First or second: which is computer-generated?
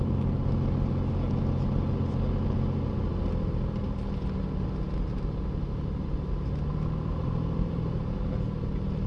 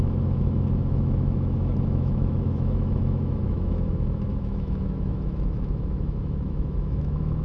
second